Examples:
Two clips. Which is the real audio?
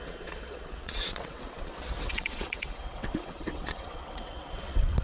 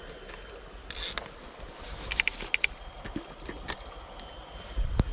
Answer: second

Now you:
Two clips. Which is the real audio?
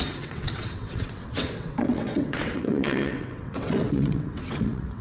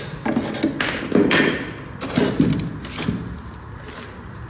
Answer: second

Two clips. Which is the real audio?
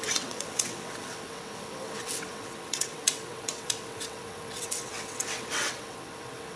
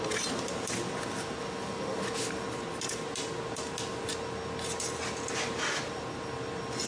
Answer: second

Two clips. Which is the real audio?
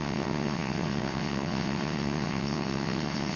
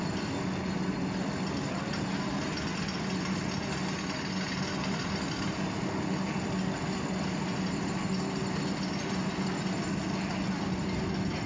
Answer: second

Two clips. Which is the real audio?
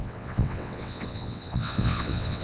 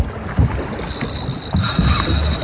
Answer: second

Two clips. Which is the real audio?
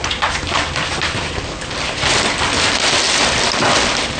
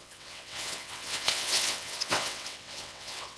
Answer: first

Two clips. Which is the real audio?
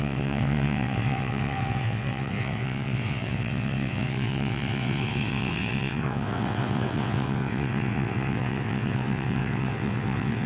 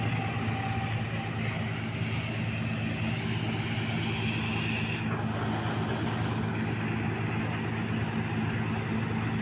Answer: second